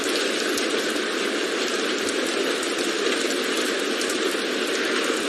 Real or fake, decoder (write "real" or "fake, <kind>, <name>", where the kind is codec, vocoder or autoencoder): real